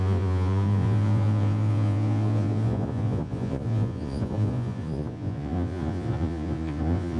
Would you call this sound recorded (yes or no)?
no